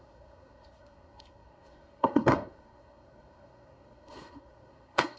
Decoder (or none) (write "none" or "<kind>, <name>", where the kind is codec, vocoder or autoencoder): codec, SNAC